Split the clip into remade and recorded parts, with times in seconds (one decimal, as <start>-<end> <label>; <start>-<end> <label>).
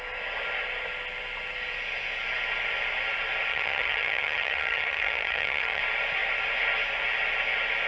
0.0-3.5 recorded; 3.5-5.8 remade; 5.8-7.9 recorded